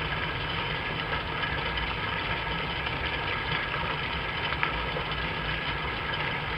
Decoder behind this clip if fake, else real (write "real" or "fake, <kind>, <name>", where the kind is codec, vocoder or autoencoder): real